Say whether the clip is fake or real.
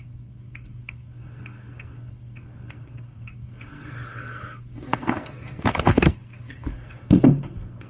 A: fake